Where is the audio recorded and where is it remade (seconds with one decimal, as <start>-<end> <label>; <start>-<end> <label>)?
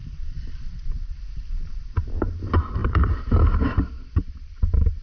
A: 0.0-5.0 remade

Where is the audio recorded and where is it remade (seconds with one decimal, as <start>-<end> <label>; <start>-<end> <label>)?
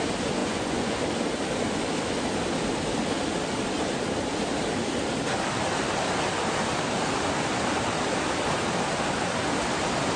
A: 0.0-0.4 recorded; 0.4-1.0 remade; 1.0-10.2 recorded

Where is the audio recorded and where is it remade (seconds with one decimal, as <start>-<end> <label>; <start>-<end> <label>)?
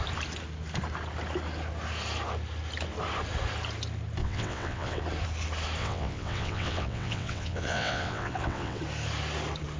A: 0.0-4.2 recorded; 4.2-5.0 remade; 5.0-5.8 recorded; 5.8-8.8 remade; 8.8-9.8 recorded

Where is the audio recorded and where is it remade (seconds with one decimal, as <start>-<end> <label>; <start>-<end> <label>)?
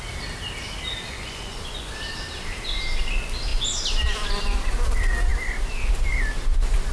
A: 0.0-1.1 recorded; 1.1-1.9 remade; 1.9-6.9 recorded